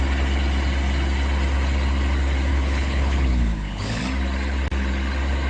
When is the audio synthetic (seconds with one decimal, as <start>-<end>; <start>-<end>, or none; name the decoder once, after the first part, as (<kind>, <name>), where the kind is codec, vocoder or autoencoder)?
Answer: 2.5-4.0 (codec, HILCodec)